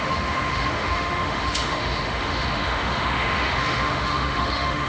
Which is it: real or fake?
fake